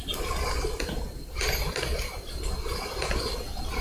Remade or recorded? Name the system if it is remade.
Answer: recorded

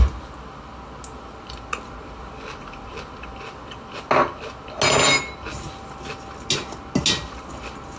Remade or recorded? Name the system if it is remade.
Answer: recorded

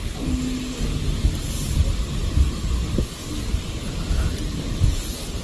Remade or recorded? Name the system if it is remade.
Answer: recorded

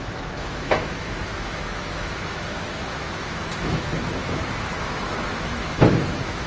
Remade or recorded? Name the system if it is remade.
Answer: remade, autoencoder, DAC-VAE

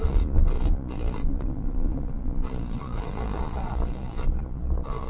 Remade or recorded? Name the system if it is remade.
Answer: remade, vocoder, Vocos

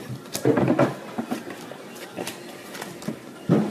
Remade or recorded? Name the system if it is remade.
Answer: remade, vocoder, BigVGAN v2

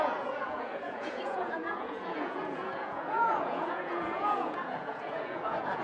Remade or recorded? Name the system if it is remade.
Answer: remade, vocoder, Vocos